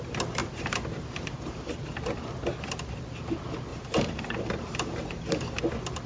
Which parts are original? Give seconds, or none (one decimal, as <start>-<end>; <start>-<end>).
0.0-0.4; 1.7-3.7; 5.6-6.1